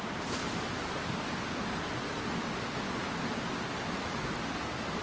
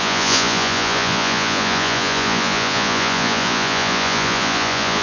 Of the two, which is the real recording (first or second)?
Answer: first